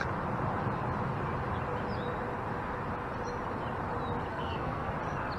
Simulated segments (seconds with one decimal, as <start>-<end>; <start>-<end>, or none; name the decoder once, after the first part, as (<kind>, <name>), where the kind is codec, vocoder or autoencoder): 4.3-4.9 (codec, SNAC)